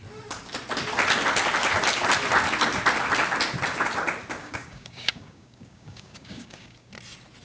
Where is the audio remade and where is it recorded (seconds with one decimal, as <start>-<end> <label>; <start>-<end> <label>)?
0.0-4.4 recorded; 4.4-6.9 remade; 6.9-7.4 recorded